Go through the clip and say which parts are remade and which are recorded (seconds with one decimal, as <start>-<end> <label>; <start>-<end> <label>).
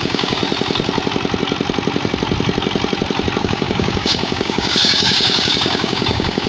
0.0-0.4 remade; 0.4-3.4 recorded; 3.4-6.5 remade